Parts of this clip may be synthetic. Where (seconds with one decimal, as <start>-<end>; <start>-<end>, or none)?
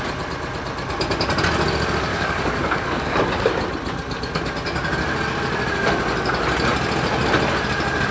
2.1-3.5